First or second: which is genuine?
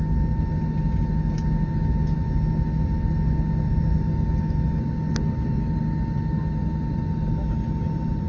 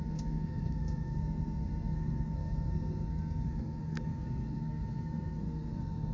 first